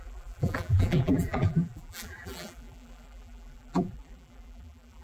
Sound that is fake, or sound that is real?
fake